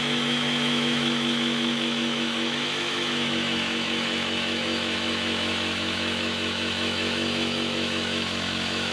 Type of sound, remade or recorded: remade